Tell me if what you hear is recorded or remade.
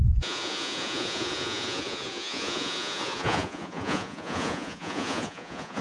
remade